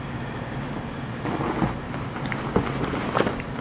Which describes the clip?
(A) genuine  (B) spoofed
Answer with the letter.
A